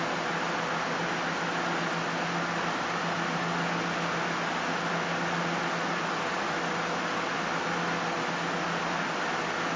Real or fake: real